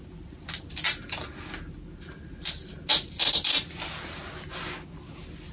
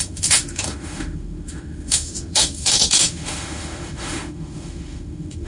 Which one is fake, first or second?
second